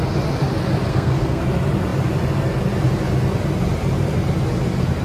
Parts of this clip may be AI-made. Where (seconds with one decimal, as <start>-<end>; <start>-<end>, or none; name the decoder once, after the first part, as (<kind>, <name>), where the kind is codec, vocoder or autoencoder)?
0.9-1.4 (codec, SNAC)